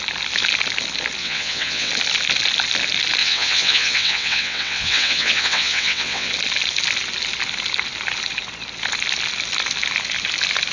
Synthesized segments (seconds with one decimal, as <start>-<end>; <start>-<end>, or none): 1.2-1.9; 3.2-6.3